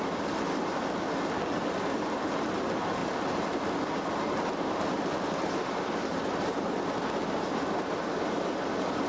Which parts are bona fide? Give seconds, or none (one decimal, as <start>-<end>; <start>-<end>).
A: 0.0-9.1